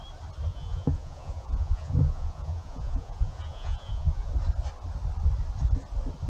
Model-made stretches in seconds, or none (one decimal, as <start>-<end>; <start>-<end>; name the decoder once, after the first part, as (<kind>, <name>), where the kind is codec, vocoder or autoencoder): 0.5-4.3 (vocoder, Vocos)